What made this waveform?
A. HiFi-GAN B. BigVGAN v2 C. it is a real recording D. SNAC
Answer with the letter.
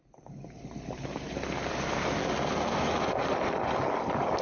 C